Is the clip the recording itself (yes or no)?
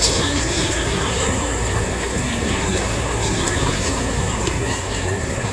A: no